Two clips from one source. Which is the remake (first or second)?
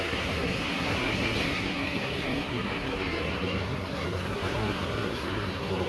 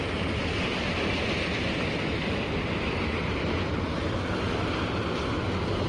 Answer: first